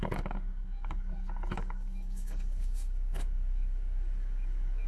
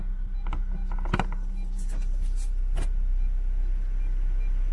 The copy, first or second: first